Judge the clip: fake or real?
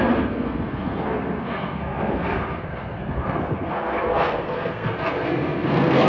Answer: fake